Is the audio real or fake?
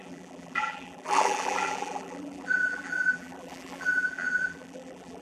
fake